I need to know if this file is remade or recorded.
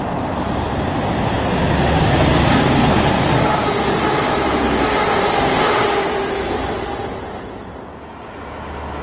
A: recorded